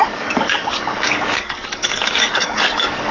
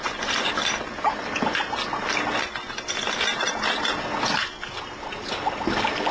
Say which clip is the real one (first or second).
second